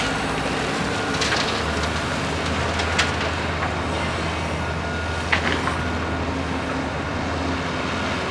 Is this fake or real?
real